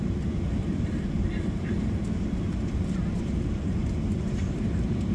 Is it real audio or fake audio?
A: fake